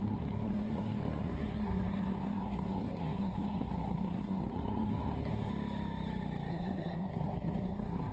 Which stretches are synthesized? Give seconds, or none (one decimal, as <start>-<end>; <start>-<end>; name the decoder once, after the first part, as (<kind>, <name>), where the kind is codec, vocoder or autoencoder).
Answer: 0.0-5.5 (codec, SNAC); 6.5-8.1